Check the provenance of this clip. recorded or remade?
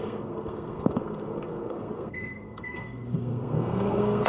remade